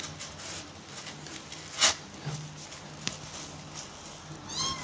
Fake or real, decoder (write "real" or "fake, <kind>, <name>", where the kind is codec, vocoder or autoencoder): real